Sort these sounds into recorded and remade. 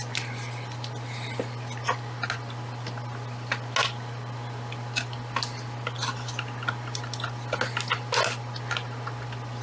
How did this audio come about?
recorded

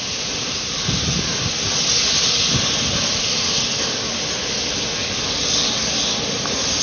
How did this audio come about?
recorded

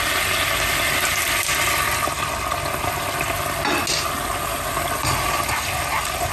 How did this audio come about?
recorded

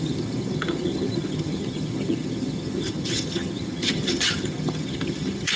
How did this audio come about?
remade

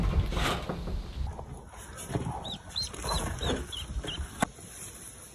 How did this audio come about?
recorded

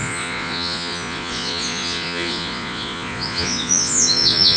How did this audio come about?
remade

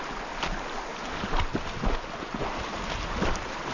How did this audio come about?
recorded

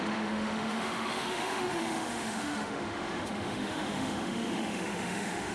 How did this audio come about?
remade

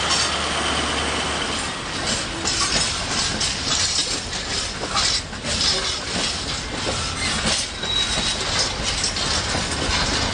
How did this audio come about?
recorded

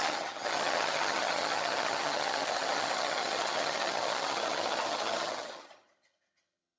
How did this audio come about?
remade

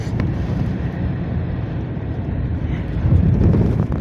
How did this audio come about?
remade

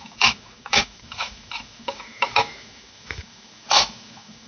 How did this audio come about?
remade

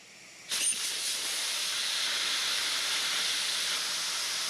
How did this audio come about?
recorded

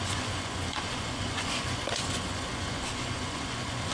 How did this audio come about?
remade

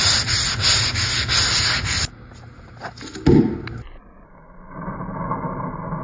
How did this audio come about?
recorded